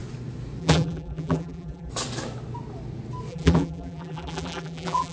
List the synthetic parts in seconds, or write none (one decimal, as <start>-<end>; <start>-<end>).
0.6-1.9; 3.3-5.1